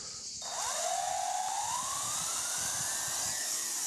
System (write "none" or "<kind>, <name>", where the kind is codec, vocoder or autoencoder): none